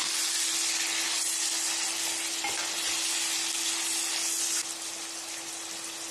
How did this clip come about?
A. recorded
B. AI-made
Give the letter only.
A